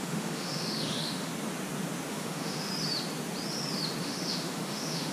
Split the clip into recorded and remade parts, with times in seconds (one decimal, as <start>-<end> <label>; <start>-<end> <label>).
0.0-1.3 remade; 1.3-2.1 recorded; 2.1-2.7 remade; 2.7-4.0 recorded; 4.0-5.1 remade